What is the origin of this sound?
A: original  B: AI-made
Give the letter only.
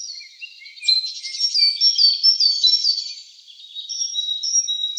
A